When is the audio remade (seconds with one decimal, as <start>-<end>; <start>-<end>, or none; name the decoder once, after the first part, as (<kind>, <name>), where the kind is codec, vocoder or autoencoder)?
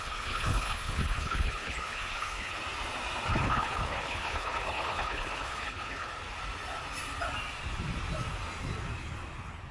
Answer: 0.0-2.6 (codec, HILCodec); 3.3-6.1